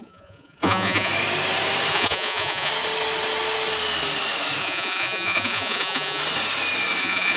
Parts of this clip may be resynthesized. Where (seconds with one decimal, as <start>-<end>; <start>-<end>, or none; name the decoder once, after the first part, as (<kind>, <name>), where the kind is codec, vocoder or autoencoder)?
0.0-1.1 (vocoder, Vocos); 1.9-2.7; 4.6-6.2; 7.0-7.4